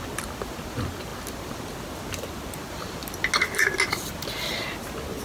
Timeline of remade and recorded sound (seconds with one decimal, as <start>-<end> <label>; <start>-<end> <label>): 0.0-5.2 recorded